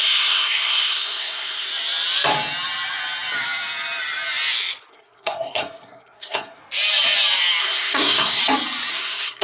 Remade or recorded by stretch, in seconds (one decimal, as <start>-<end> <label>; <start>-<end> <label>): 0.0-1.7 remade; 1.7-4.9 recorded; 4.9-6.6 remade; 6.6-7.6 recorded; 7.6-8.4 remade; 8.4-8.9 recorded; 8.9-9.4 remade